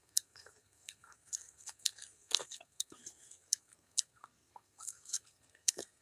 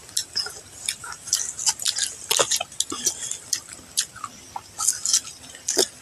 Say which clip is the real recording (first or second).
second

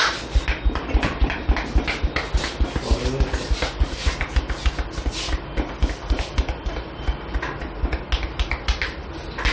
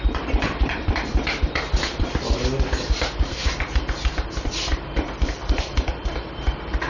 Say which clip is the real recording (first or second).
first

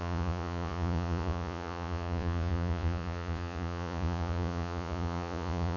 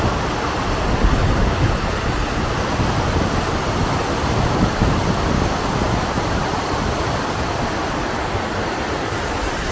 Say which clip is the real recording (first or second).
second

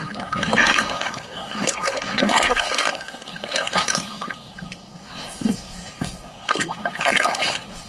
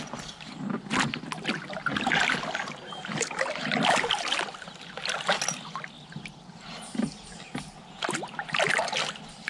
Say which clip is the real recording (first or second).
second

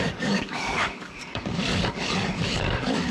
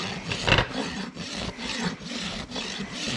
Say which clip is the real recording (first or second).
second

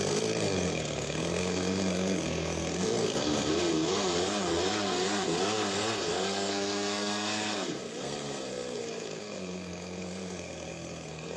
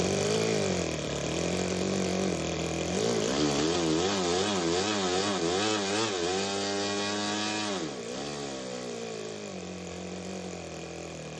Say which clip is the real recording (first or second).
second